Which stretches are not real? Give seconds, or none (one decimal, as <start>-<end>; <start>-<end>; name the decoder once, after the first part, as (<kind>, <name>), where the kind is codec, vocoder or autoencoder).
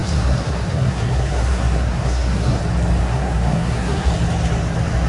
0.0-2.6 (codec, SNAC); 3.0-4.1